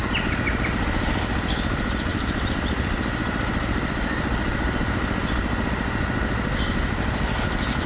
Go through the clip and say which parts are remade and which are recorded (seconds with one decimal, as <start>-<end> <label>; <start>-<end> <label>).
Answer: 0.0-2.1 recorded; 2.1-5.7 remade; 5.7-7.9 recorded